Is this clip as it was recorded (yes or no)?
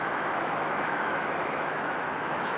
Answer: no